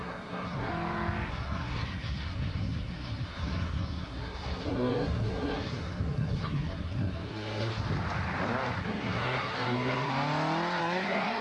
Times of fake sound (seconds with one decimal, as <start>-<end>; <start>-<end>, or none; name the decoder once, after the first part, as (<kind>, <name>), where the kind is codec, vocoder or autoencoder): 0.0-0.7 (codec, SNAC); 1.3-7.7; 8.8-10.1; 10.8-11.4